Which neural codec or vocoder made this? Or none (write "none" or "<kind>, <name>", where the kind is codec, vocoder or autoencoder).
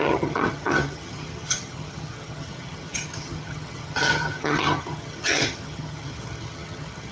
vocoder, HiFi-GAN